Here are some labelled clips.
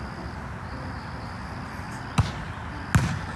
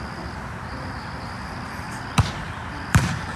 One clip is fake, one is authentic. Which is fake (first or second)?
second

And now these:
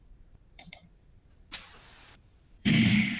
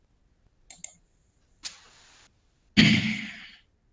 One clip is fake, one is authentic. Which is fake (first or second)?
first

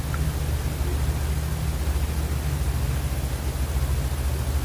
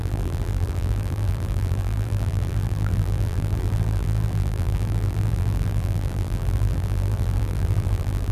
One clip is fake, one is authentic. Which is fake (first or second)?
second